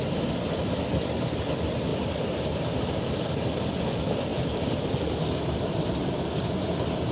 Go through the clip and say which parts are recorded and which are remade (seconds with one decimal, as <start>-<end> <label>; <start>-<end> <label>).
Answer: 0.0-4.3 recorded; 4.3-4.8 remade; 4.8-6.0 recorded; 6.0-6.6 remade; 6.6-7.1 recorded